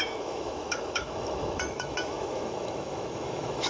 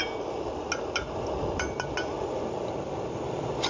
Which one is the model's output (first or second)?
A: first